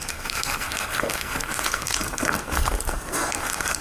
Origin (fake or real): fake